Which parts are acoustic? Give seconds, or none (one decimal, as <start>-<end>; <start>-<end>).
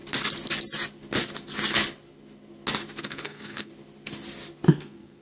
0.0-3.0; 3.7-4.7